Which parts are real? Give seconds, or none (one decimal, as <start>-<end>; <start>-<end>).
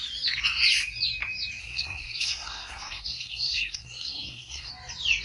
0.0-1.6; 4.7-5.2